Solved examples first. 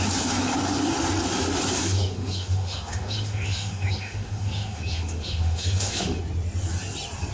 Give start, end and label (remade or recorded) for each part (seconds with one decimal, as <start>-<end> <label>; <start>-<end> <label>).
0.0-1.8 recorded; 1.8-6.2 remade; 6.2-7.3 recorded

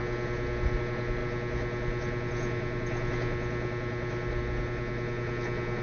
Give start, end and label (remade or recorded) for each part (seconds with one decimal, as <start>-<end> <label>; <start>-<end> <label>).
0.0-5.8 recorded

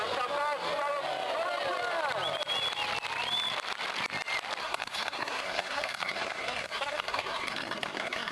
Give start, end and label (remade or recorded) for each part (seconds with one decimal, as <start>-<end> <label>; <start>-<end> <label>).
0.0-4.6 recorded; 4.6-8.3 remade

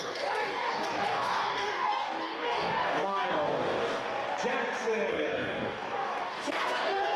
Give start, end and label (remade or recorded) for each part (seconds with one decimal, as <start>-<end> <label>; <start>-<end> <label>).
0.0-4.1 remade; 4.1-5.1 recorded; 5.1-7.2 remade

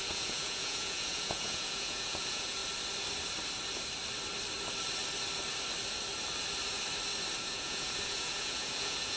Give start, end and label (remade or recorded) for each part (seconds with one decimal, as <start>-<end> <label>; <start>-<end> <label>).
0.0-2.6 remade; 2.6-7.4 recorded; 7.4-9.2 remade

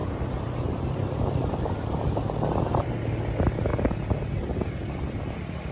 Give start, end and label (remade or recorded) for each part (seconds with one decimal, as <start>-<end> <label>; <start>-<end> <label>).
0.0-2.9 remade; 2.9-5.7 recorded

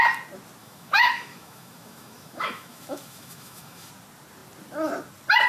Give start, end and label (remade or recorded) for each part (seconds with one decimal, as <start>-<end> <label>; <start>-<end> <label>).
0.0-0.6 recorded; 0.6-3.9 remade; 3.9-5.5 recorded